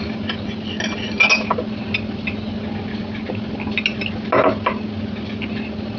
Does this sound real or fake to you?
real